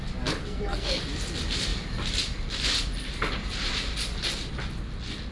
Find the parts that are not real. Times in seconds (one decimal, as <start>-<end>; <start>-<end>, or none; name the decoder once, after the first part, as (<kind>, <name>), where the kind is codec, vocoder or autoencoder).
0.4-1.0 (codec, SNAC)